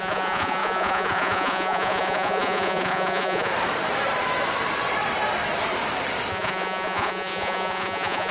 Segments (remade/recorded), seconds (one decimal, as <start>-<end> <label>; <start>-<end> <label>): 0.0-3.5 remade; 3.5-6.3 recorded; 6.3-8.3 remade